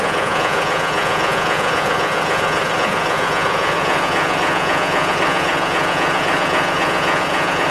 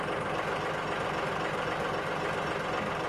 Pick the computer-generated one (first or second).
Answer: first